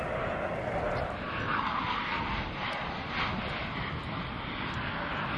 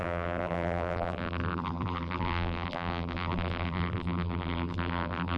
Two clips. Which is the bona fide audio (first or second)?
first